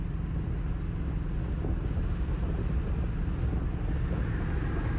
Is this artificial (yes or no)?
no